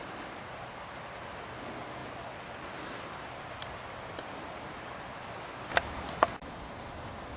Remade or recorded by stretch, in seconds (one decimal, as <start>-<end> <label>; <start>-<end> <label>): 0.0-2.0 recorded; 2.0-5.6 remade; 5.6-7.4 recorded